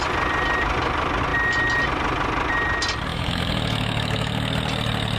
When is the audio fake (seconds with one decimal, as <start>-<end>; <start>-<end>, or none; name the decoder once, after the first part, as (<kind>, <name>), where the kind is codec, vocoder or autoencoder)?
3.1-4.4 (autoencoder, DAC-VAE)

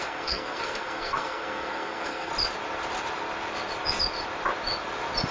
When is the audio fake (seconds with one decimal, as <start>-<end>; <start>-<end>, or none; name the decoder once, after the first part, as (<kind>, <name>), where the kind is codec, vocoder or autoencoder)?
0.0-2.3 (codec, SNAC)

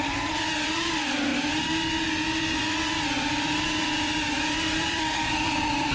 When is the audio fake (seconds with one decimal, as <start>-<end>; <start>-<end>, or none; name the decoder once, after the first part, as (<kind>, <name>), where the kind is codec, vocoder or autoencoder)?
0.0-1.3 (vocoder, BigVGAN v2); 2.8-5.9